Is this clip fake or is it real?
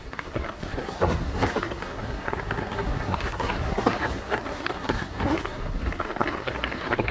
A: fake